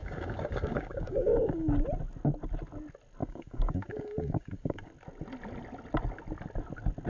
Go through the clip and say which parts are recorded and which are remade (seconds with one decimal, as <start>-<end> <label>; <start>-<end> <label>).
0.0-1.7 remade; 1.7-3.2 recorded; 3.2-4.9 remade; 4.9-7.1 recorded